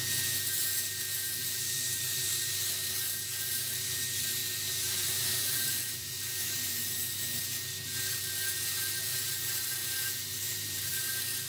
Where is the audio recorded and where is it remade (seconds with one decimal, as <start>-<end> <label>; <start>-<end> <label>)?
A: 0.0-1.4 recorded; 1.4-2.2 remade; 2.2-4.4 recorded; 4.4-6.7 remade; 6.7-9.1 recorded; 9.1-11.0 remade; 11.0-11.5 recorded